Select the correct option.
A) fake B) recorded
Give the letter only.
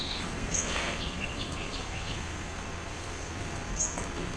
A